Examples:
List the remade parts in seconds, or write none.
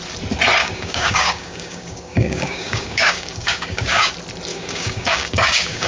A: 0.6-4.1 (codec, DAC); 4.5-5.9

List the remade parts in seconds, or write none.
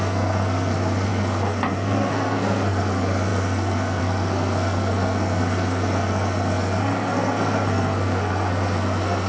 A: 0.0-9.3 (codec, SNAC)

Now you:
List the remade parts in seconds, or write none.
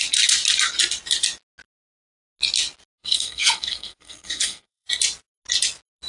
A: 3.0-4.9 (codec, SNAC)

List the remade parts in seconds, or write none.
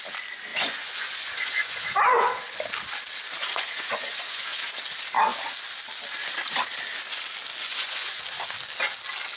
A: 0.5-2.5 (vocoder, Vocos); 3.4-4.7; 7.6-8.2